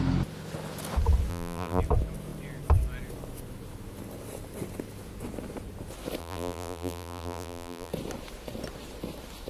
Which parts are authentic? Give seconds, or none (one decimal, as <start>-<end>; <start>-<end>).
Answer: 0.0-1.3; 1.8-6.2; 7.9-9.5